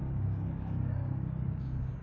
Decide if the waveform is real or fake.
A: fake